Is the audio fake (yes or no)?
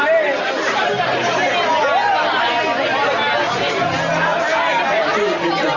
no